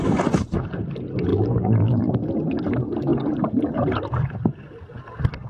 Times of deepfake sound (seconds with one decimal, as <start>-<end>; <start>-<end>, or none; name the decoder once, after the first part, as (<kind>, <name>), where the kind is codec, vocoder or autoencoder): 1.3-2.1 (vocoder, BigVGAN v2)